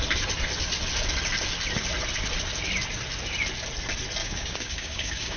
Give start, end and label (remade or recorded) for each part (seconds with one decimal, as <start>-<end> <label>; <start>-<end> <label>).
0.0-4.2 recorded; 4.2-5.4 remade